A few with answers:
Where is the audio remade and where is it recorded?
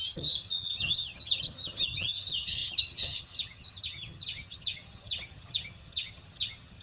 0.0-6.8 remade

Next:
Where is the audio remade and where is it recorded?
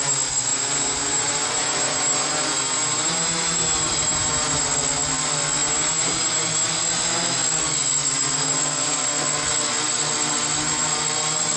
0.0-0.5 recorded; 0.5-4.6 remade; 4.6-5.6 recorded; 5.6-6.7 remade; 6.7-11.6 recorded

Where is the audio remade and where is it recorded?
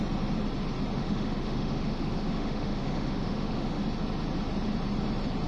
0.0-1.0 recorded; 1.0-3.8 remade; 3.8-5.5 recorded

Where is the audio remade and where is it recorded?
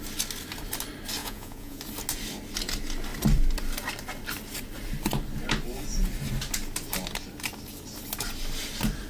0.0-1.2 recorded; 1.2-1.8 remade; 1.8-9.1 recorded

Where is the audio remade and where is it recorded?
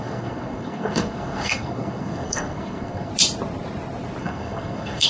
0.0-3.1 remade; 3.1-4.2 recorded; 4.2-5.1 remade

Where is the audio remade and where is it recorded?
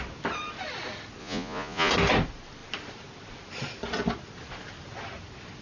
0.0-1.2 recorded; 1.2-1.9 remade; 1.9-5.6 recorded